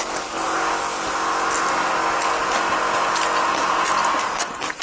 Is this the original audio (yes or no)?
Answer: yes